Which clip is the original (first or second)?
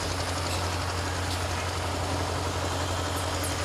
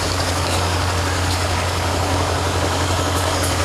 first